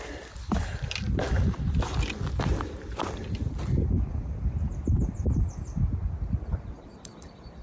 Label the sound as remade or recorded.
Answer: recorded